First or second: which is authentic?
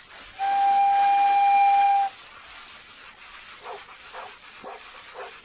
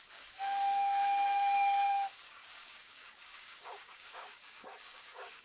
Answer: first